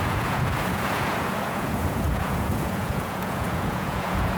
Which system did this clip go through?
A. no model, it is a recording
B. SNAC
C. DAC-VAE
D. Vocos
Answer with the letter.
D